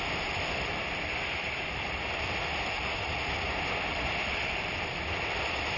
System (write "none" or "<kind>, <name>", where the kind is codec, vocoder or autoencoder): none